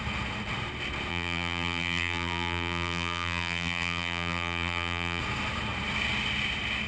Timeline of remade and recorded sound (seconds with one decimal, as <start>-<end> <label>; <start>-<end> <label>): 0.0-1.1 recorded; 1.1-5.2 remade; 5.2-6.9 recorded